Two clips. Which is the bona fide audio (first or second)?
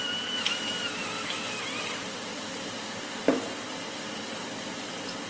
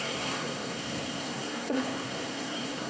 first